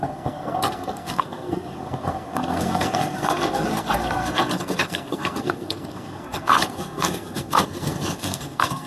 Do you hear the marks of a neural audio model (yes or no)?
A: yes